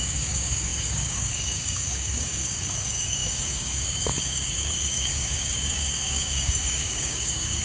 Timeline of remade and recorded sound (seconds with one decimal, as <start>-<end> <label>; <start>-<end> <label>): 0.0-7.6 remade